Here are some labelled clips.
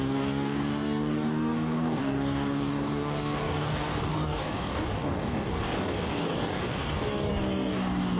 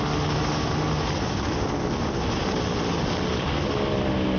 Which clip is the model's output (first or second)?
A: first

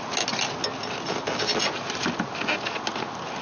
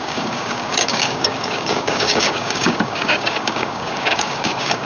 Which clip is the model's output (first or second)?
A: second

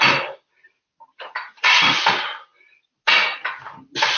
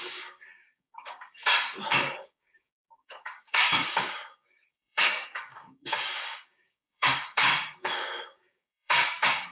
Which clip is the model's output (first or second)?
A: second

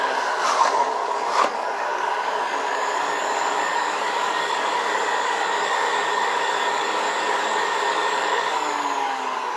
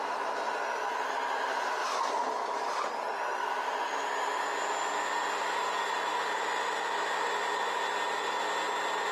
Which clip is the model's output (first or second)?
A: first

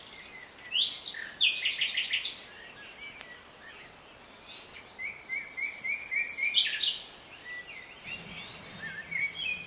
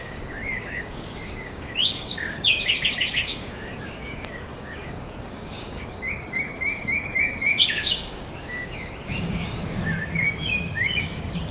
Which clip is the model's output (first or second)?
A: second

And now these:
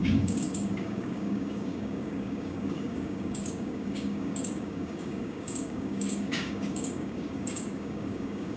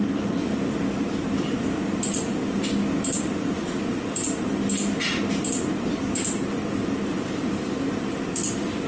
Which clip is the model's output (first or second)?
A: first